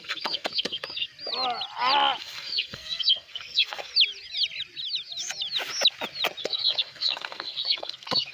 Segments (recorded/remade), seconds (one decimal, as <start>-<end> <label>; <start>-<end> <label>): 0.0-1.1 remade; 1.1-2.2 recorded; 2.2-3.9 remade; 3.9-6.4 recorded; 6.4-8.3 remade